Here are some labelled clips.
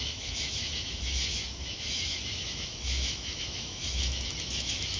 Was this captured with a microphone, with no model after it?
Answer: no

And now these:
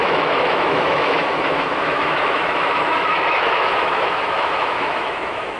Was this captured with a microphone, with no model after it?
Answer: no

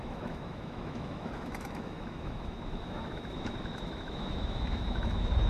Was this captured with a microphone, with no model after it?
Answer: no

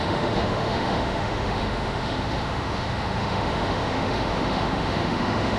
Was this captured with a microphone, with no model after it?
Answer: no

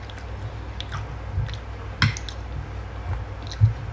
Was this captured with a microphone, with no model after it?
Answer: yes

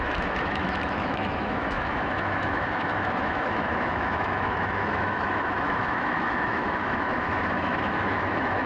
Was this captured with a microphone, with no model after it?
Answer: no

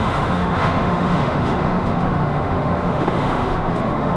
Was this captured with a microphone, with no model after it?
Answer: no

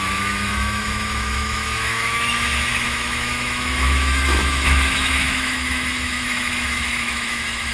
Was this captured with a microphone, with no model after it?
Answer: no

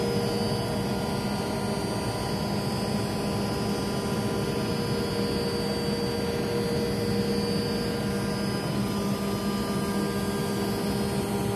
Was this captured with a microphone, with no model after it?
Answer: yes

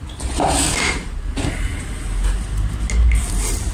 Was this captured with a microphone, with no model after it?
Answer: yes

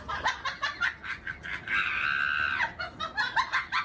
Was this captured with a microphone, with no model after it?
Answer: yes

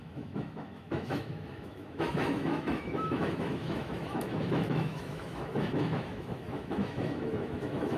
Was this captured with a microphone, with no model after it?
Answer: no